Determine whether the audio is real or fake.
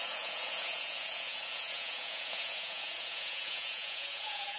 fake